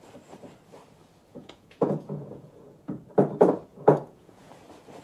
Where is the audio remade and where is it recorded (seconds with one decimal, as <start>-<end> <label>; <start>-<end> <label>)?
0.0-1.3 recorded; 1.3-3.0 remade; 3.0-3.7 recorded; 3.7-4.5 remade; 4.5-5.0 recorded